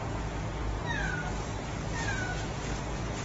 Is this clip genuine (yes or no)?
yes